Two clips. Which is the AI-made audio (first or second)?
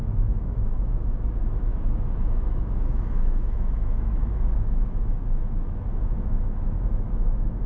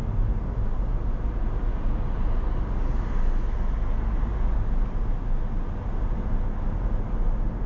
first